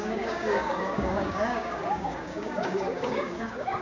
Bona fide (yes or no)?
no